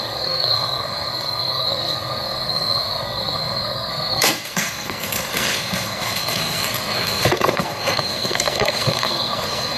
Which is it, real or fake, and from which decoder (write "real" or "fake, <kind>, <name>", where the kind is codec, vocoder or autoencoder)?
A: fake, codec, SNAC